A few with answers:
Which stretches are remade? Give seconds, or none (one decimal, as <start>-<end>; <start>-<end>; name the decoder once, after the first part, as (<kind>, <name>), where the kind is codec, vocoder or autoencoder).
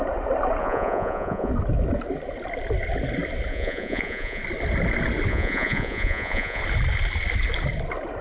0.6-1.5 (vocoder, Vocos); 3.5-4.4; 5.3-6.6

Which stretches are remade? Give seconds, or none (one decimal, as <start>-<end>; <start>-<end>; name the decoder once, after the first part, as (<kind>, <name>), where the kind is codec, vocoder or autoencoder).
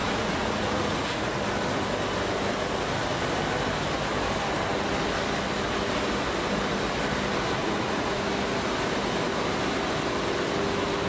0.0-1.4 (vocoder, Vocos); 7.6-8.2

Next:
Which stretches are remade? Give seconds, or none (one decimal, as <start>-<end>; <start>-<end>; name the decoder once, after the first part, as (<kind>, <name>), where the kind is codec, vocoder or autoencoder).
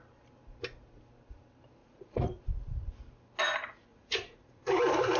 1.8-2.4 (vocoder, Vocos); 3.9-4.6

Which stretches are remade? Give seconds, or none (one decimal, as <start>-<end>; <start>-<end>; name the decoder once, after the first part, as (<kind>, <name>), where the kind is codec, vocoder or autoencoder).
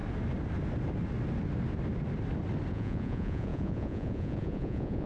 2.7-5.1 (vocoder, Vocos)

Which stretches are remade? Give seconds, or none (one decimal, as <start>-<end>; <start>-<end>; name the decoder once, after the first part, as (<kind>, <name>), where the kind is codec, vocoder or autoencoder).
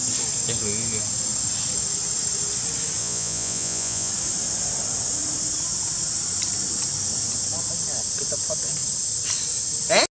3.0-4.1 (vocoder, Vocos)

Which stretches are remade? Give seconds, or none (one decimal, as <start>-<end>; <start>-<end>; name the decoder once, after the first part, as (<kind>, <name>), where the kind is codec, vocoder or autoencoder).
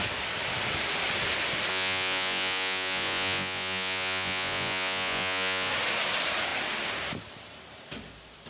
1.7-5.7 (vocoder, Vocos)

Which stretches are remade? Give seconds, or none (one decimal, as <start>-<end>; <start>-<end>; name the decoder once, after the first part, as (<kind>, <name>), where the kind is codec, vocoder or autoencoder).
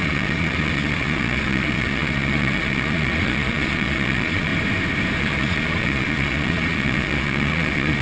0.0-4.5 (vocoder, Vocos); 5.2-8.0